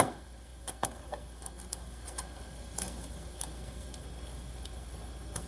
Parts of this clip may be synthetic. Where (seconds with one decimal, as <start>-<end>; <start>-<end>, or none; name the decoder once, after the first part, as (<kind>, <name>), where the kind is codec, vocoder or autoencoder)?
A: 0.0-5.5 (codec, SNAC)